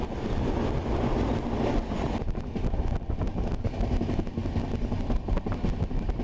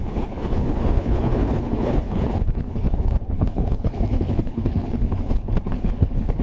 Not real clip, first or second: second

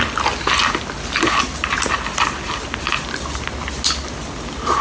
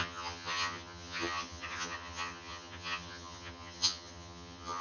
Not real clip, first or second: second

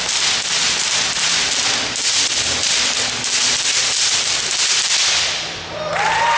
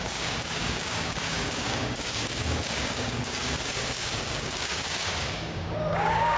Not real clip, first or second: second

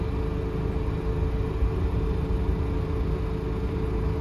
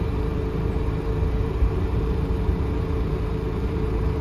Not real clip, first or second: second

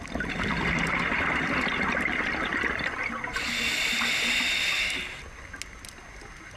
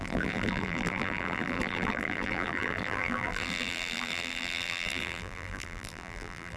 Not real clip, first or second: second